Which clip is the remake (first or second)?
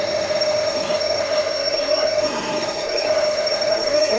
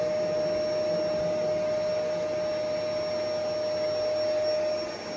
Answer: first